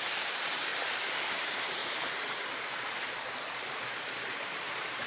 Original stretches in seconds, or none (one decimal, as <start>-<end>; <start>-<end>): 0.7-1.4; 1.8-4.0